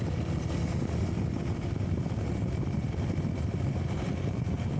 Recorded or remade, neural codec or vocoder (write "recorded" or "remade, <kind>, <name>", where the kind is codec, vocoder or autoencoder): recorded